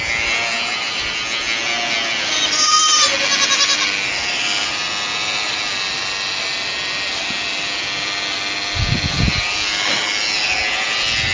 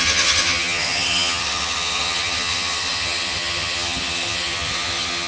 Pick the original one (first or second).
first